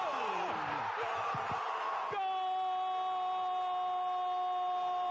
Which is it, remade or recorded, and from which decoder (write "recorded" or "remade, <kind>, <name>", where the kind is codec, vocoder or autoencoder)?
recorded